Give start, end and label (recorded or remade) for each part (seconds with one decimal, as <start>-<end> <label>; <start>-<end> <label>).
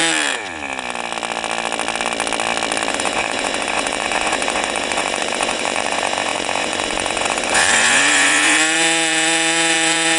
0.0-2.9 recorded; 2.9-10.2 remade